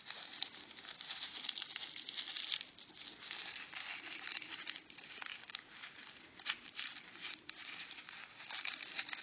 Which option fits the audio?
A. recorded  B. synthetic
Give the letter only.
A